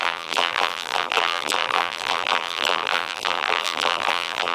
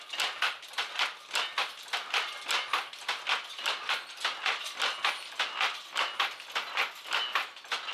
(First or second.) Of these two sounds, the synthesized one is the first